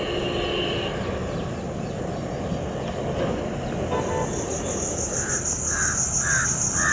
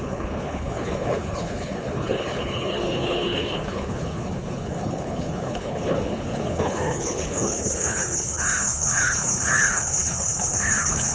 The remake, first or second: second